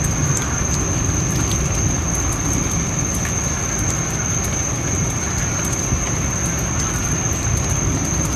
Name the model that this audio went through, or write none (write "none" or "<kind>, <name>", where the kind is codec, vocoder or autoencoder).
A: none